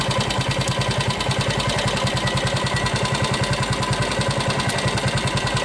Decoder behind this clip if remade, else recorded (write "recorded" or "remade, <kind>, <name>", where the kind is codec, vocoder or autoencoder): recorded